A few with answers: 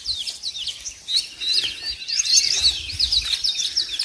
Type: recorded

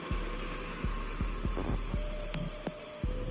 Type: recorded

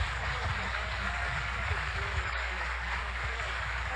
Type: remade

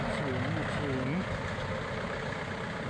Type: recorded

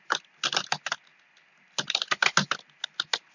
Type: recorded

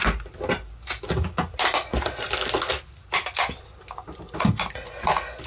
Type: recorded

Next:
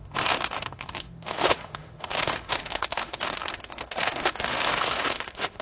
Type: remade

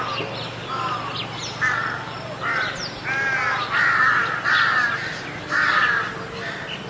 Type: recorded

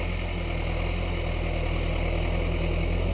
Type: recorded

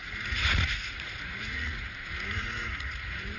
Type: remade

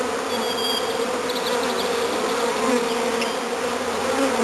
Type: recorded